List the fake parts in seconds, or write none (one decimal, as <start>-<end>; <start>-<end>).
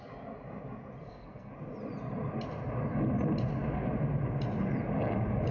1.0-1.5